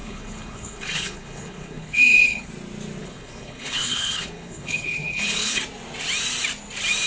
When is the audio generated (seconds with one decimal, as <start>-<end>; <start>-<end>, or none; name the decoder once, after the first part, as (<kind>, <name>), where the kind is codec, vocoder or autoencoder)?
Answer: 0.0-2.5 (codec, HILCodec); 3.0-5.6

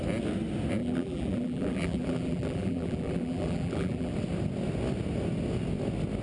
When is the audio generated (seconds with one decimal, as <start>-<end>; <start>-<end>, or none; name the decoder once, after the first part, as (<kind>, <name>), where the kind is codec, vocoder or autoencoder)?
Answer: 0.8-4.1 (vocoder, BigVGAN v2)

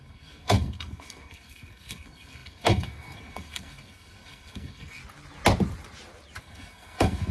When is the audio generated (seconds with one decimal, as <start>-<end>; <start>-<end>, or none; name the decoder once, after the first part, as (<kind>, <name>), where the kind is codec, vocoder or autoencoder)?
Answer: 0.0-5.0 (codec, SNAC); 6.4-7.3

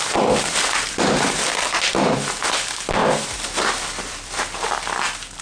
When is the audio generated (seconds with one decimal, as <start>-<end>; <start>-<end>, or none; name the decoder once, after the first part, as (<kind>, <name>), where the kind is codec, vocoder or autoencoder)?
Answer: 0.0-5.4 (vocoder, BigVGAN v2)

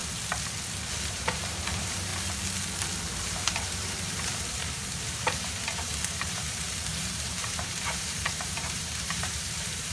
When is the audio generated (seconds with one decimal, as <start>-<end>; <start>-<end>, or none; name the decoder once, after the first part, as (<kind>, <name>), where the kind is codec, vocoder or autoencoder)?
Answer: 1.1-2.1 (vocoder, BigVGAN v2); 3.2-9.9

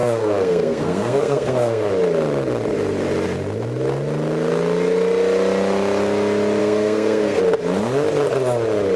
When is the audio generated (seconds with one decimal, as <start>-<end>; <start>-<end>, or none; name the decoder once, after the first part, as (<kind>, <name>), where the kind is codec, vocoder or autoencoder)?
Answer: 0.0-1.9 (codec, SNAC); 6.6-7.4